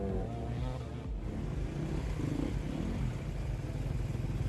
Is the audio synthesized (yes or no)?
no